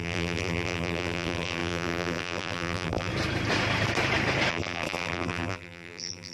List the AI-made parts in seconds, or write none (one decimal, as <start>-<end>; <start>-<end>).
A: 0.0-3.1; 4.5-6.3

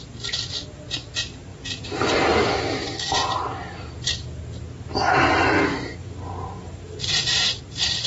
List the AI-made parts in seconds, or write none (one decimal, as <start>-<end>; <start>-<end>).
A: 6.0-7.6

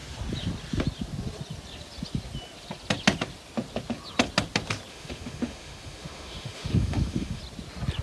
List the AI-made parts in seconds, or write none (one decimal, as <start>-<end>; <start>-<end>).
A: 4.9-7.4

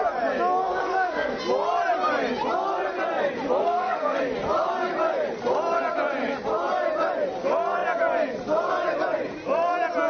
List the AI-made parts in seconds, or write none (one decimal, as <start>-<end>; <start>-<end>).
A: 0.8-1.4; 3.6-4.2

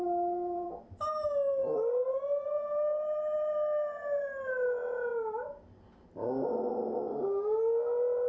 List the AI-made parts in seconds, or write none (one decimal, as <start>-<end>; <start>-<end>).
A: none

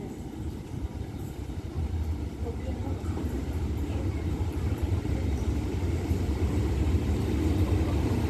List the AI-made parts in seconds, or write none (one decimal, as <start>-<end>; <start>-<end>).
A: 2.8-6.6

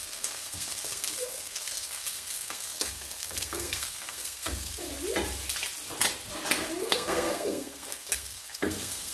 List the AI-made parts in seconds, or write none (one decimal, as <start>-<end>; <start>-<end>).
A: 0.0-4.9; 6.8-9.1